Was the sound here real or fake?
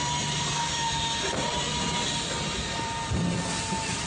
fake